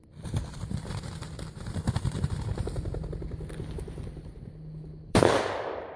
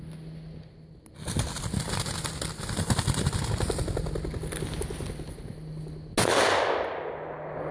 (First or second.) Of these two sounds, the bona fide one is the second